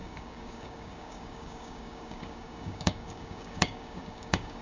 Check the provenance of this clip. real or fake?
fake